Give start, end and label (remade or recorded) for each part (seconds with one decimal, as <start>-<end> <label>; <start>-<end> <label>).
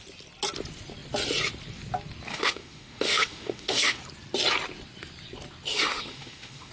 0.0-2.3 recorded; 2.3-4.0 remade; 4.0-5.7 recorded; 5.7-6.7 remade